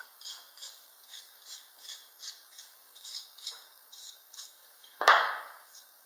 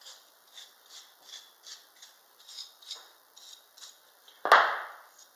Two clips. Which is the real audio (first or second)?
second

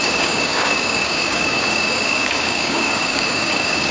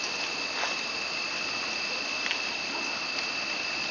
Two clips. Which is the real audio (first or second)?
second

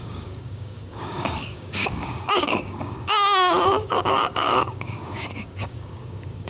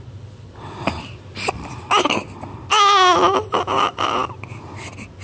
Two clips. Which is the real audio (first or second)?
second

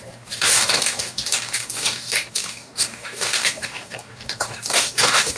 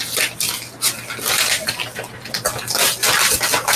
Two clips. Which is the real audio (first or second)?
second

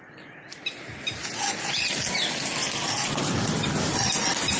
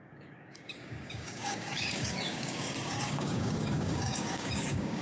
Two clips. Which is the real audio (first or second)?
first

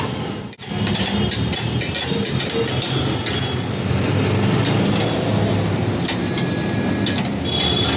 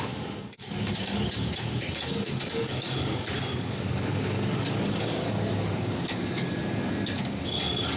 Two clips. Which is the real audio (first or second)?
first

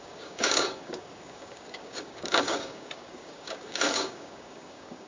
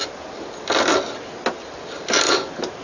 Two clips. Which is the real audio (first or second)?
second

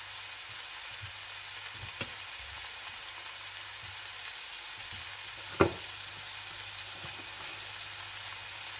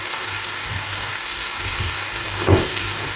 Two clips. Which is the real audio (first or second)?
first